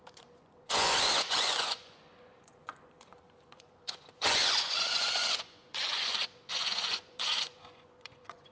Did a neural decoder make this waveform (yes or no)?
yes